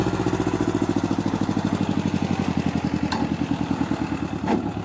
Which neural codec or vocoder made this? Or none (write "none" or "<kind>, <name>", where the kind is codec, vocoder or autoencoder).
none